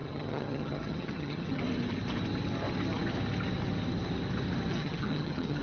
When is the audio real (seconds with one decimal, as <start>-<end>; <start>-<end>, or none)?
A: 1.6-4.7